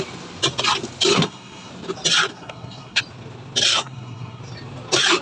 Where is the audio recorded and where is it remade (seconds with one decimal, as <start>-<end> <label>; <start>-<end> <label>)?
0.0-1.1 recorded; 1.1-1.7 remade; 1.7-2.3 recorded; 2.3-3.0 remade; 3.0-3.7 recorded; 3.7-4.4 remade; 4.4-5.2 recorded